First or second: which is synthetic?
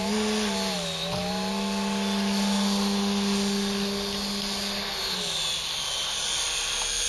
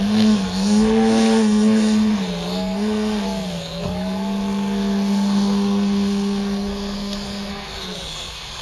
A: second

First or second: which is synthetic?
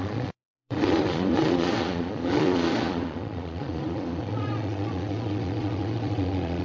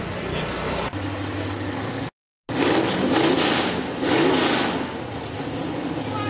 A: first